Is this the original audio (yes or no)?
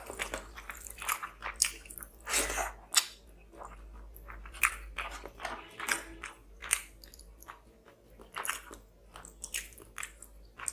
yes